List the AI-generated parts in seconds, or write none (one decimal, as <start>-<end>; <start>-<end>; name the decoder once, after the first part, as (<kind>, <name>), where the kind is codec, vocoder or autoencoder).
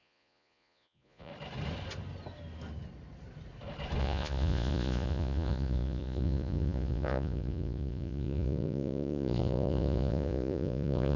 0.0-1.3 (vocoder, Vocos); 4.0-11.2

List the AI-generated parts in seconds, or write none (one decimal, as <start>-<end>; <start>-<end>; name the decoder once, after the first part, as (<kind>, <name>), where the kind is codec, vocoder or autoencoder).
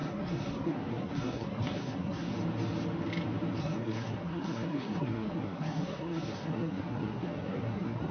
0.0-2.3 (codec, SNAC); 3.6-8.1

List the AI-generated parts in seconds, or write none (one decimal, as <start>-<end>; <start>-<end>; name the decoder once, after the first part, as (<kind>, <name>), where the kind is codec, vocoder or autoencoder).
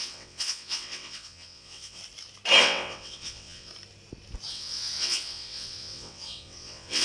0.0-2.0 (vocoder, WaveNeXt); 2.6-3.7; 4.5-7.0